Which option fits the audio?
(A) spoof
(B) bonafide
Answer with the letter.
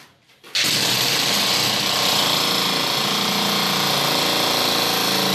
B